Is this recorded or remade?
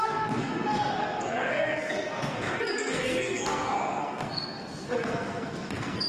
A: remade